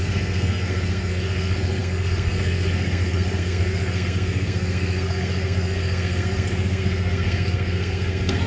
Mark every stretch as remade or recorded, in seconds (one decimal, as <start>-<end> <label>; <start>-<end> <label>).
0.0-8.5 remade